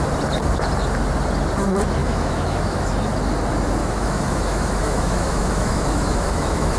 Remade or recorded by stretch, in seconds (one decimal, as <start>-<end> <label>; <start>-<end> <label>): 0.0-2.0 recorded; 2.0-2.9 remade; 2.9-3.8 recorded; 3.8-6.8 remade